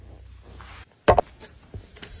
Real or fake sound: real